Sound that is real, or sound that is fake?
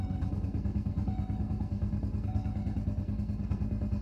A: fake